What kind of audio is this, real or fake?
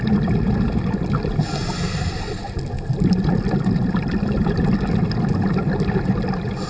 real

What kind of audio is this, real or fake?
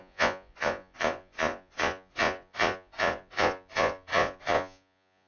fake